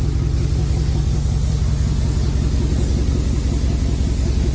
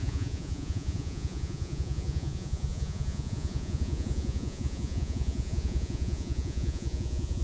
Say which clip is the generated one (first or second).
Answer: second